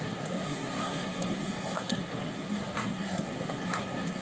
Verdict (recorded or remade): remade